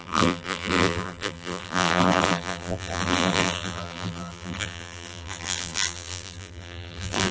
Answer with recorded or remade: remade